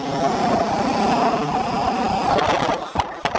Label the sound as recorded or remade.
recorded